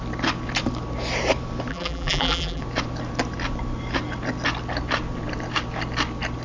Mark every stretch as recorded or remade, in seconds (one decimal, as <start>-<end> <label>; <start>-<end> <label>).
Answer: 0.0-1.7 recorded; 1.7-2.6 remade; 2.6-6.4 recorded